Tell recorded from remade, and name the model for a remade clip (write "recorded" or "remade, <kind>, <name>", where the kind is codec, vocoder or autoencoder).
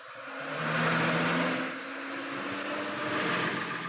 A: recorded